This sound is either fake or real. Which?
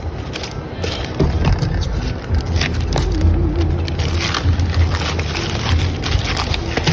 real